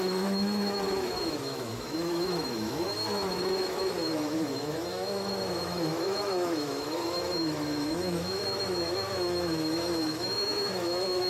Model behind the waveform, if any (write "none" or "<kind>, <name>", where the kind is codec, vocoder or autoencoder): autoencoder, DAC-VAE